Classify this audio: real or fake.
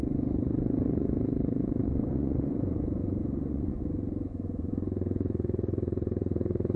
fake